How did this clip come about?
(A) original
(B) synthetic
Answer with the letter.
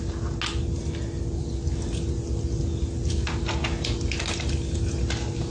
A